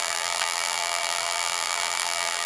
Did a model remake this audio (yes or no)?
yes